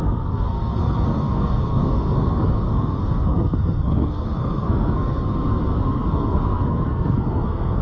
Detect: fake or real fake